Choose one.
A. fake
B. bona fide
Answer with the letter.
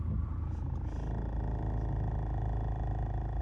B